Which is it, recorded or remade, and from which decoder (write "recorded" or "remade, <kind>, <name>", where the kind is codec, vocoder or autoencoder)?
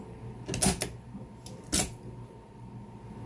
recorded